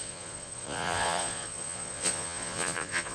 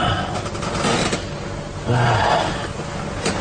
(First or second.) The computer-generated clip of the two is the first